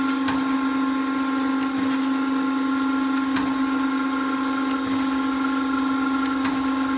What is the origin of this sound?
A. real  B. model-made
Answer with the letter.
A